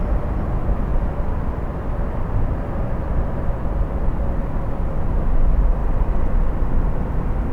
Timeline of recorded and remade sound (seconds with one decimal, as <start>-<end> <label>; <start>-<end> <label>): 0.0-0.9 recorded; 0.9-4.3 remade; 4.3-5.8 recorded; 5.8-7.5 remade